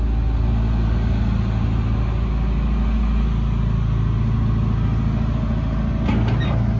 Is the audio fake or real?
real